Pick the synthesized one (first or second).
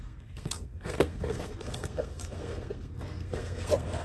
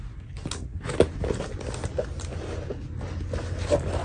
first